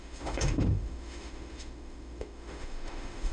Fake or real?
fake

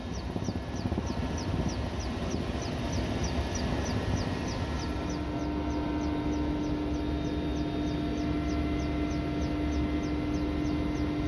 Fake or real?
real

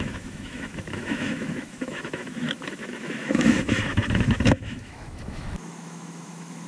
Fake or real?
fake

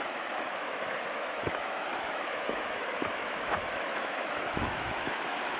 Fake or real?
fake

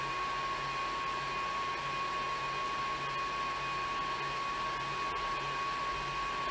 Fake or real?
real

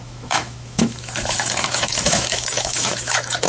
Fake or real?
fake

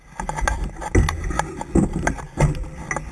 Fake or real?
real